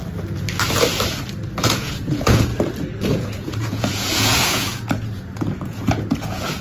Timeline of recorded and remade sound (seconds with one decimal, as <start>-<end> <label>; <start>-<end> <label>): 0.0-1.6 recorded; 1.6-2.5 remade; 2.5-3.1 recorded; 3.1-6.6 remade